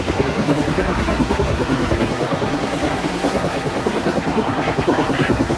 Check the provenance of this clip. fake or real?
fake